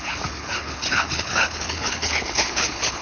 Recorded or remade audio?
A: remade